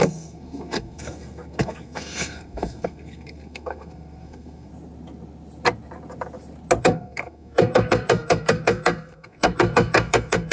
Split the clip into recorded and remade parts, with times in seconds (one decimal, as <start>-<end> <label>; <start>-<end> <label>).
0.0-4.7 remade; 4.7-6.8 recorded; 6.8-10.5 remade